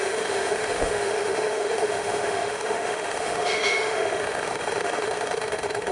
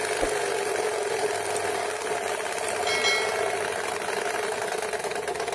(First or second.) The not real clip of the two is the first